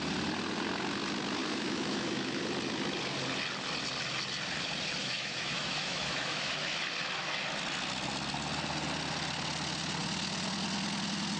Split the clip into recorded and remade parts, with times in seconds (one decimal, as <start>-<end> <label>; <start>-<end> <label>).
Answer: 0.0-1.4 recorded; 1.4-2.4 remade; 2.4-5.0 recorded; 5.0-6.5 remade; 6.5-11.4 recorded